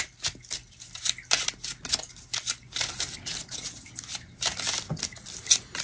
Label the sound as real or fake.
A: real